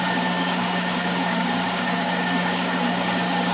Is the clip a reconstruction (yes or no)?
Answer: yes